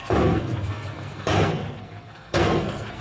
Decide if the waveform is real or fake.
fake